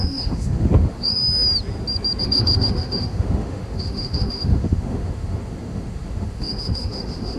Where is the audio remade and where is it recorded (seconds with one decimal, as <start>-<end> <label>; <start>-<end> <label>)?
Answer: 0.0-1.2 remade; 1.2-2.2 recorded; 2.2-7.4 remade